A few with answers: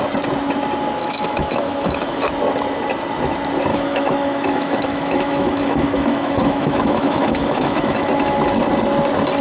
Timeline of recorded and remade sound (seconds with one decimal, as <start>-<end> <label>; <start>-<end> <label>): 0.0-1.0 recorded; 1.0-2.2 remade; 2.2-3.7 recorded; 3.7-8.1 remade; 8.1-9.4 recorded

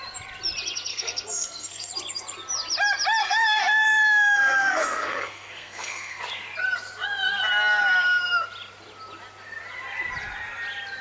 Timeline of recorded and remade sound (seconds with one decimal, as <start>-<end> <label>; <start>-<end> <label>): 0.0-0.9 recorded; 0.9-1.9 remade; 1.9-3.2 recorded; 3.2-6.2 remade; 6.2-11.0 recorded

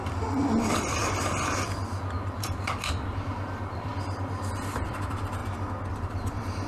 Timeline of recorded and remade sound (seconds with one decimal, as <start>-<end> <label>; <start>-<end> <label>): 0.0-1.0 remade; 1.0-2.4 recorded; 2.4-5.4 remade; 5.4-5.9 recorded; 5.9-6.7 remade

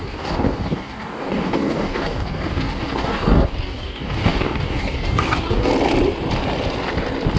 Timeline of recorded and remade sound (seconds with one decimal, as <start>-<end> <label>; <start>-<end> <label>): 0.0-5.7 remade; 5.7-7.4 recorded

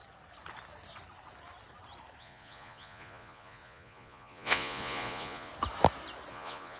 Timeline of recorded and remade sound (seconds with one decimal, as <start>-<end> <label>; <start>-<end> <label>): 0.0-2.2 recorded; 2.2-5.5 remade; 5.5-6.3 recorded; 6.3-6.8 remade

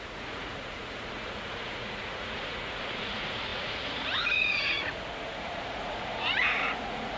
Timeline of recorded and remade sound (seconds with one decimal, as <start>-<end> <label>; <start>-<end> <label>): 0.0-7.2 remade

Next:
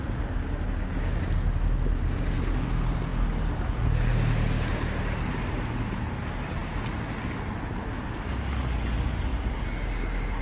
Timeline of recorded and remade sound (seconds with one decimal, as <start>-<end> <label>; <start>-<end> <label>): 0.0-10.4 recorded